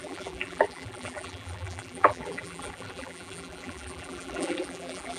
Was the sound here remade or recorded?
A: remade